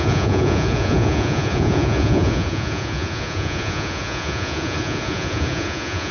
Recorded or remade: remade